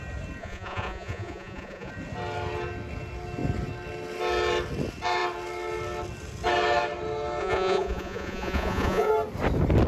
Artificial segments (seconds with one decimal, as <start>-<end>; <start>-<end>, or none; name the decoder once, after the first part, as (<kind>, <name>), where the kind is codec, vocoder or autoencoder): 0.4-1.9 (vocoder, Vocos); 7.4-9.1